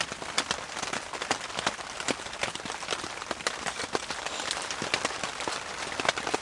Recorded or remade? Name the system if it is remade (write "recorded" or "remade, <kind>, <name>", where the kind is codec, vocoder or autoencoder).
remade, vocoder, BigVGAN v2